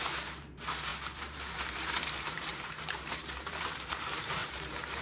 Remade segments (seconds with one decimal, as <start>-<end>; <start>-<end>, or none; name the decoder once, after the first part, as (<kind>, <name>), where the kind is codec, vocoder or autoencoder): 0.0-5.0 (vocoder, BigVGAN v2)